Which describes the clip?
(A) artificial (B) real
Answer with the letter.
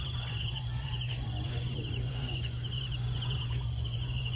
A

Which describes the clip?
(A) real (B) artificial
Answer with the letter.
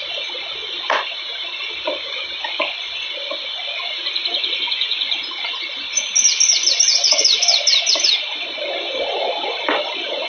A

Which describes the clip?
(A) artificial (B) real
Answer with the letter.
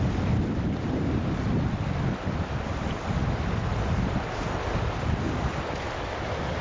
B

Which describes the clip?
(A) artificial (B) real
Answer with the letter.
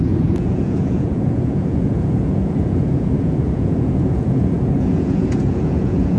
A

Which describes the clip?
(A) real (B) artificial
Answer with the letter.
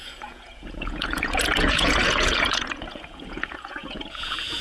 B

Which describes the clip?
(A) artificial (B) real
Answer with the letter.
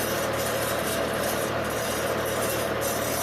B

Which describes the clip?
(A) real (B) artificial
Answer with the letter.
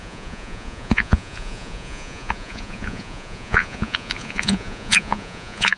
B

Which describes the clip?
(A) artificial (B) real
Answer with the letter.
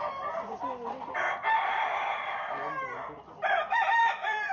B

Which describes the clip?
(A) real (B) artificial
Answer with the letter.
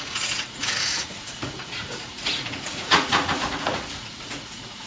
B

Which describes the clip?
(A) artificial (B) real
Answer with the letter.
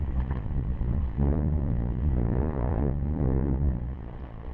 A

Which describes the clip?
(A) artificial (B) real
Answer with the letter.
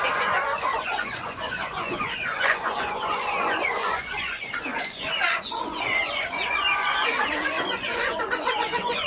A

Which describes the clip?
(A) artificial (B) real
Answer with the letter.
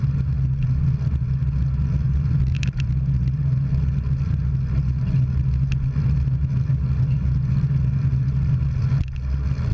B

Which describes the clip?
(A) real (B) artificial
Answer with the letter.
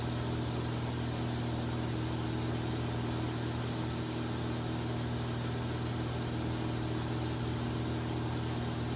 A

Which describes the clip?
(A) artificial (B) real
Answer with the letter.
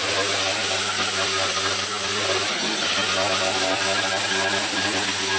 B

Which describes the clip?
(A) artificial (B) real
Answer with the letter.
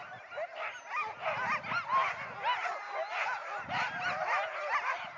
B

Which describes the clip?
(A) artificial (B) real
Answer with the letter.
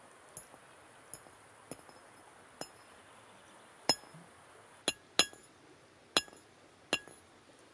B